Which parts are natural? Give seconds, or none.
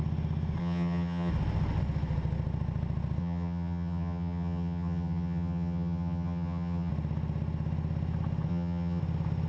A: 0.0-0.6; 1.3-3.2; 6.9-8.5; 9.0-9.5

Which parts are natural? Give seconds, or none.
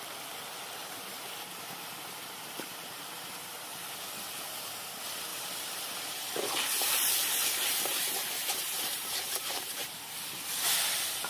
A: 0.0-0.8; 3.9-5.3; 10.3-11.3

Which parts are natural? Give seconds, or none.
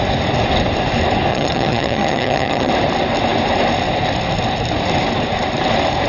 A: 0.0-1.3; 2.7-6.1